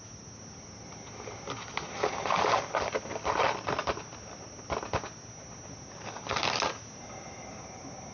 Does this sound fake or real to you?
real